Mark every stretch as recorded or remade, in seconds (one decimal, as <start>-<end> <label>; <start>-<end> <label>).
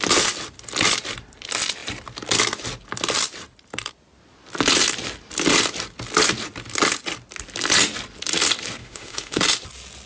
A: 0.0-8.8 recorded; 8.8-9.4 remade; 9.4-10.1 recorded